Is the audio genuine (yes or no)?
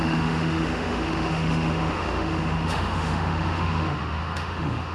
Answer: no